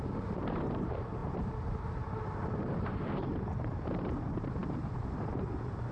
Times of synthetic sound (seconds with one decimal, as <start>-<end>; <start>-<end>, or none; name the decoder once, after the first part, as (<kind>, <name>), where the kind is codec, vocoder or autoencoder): 0.0-5.9 (vocoder, BigVGAN v2)